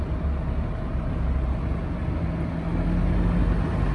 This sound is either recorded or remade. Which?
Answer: recorded